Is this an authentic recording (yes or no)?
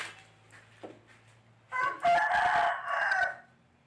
yes